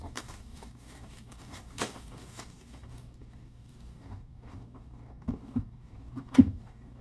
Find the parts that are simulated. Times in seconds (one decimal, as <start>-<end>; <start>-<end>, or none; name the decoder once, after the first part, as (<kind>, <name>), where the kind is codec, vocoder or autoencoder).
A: 0.0-7.0 (codec, DAC)